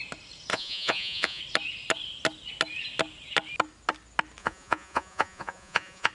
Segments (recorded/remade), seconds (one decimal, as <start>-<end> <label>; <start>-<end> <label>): 0.0-0.5 recorded; 0.5-1.4 remade; 1.4-4.4 recorded; 4.4-6.1 remade